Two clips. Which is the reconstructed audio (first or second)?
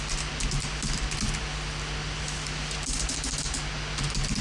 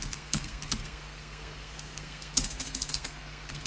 second